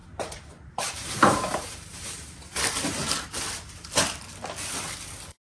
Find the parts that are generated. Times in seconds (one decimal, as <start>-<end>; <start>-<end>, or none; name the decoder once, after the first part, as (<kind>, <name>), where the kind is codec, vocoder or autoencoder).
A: 0.0-3.4 (vocoder, BigVGAN v2)